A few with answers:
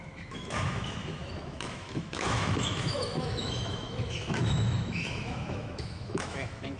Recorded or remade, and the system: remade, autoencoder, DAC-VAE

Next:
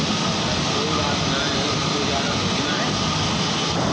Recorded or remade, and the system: recorded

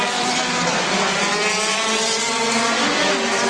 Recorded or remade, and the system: recorded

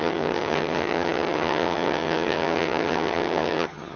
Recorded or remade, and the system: remade, vocoder, HiFi-GAN